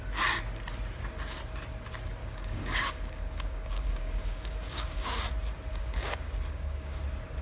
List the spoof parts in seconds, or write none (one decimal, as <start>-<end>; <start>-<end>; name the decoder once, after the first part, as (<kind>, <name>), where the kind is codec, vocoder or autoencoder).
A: 2.2-5.2 (codec, DAC); 5.7-7.0